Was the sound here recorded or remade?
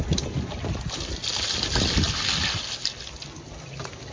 recorded